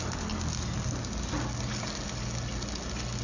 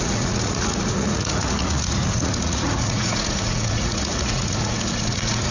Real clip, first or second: first